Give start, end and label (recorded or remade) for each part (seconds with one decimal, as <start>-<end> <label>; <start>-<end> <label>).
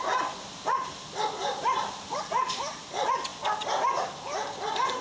0.0-1.4 recorded; 1.4-2.9 remade; 2.9-5.0 recorded